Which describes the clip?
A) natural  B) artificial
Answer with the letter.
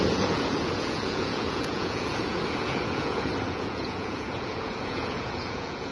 B